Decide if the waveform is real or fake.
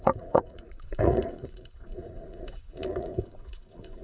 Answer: fake